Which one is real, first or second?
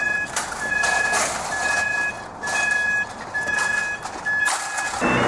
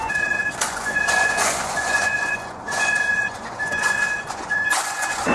first